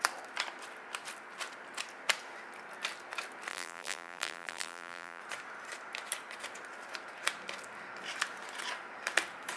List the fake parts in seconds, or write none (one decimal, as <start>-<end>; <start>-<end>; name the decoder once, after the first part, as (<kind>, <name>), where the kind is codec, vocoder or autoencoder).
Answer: 3.5-5.2 (vocoder, BigVGAN v2)